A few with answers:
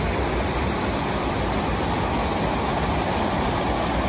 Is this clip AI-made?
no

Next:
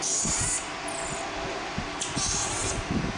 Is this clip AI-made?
no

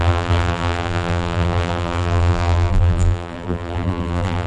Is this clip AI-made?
yes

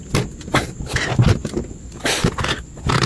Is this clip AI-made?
no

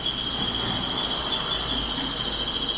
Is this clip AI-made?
no